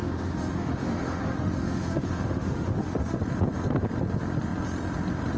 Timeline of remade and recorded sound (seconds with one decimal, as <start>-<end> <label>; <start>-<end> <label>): 0.0-3.2 remade; 3.2-5.4 recorded